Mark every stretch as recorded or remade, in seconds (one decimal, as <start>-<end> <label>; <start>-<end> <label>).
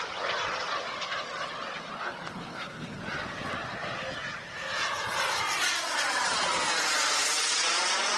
0.0-2.3 recorded; 2.3-3.0 remade; 3.0-8.2 recorded